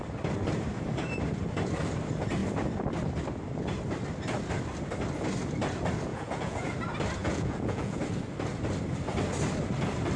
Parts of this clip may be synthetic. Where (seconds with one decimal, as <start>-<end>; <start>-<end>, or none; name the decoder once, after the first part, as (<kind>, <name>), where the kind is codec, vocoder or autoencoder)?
6.1-6.7 (vocoder, Vocos); 7.2-8.0